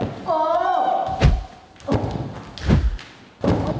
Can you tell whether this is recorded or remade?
recorded